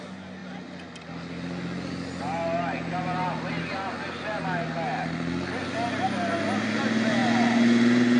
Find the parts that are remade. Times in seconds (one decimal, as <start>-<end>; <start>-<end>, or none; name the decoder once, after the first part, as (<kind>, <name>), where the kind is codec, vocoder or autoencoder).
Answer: none